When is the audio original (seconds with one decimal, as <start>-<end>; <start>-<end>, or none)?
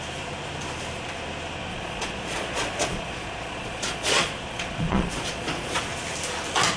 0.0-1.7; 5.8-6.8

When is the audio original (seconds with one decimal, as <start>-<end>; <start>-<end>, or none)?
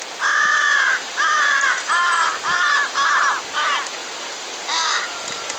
0.0-0.5; 2.0-5.6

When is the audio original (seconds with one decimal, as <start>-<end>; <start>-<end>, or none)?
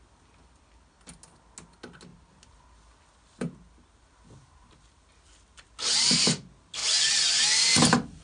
0.0-8.2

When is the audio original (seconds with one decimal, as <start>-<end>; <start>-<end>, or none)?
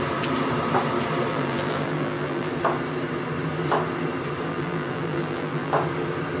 0.0-1.3; 2.5-4.5; 5.7-6.4